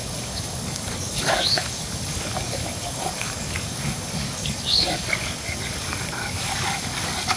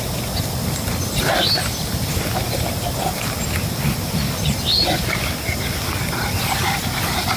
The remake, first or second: first